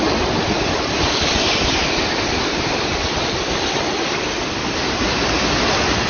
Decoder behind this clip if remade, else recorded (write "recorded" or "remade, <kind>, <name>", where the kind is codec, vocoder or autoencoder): recorded